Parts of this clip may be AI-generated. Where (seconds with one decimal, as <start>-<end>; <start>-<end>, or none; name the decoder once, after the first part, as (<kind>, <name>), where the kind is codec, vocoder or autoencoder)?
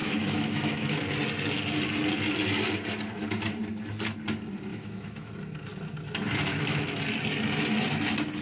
0.0-1.0 (autoencoder, DAC-VAE); 4.7-5.3; 6.5-7.0